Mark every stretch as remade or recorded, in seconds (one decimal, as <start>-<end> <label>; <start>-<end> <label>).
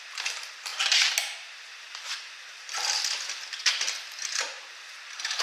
0.0-5.4 recorded